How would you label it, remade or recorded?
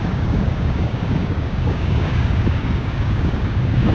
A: remade